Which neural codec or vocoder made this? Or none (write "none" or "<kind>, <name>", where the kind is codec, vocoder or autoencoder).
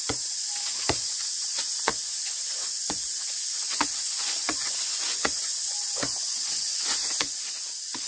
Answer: vocoder, Vocos